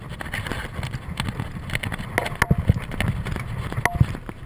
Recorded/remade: recorded